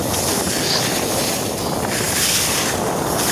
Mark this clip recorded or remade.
recorded